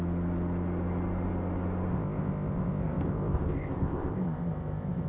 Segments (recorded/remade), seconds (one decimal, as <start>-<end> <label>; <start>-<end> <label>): 0.0-1.9 recorded; 1.9-5.1 remade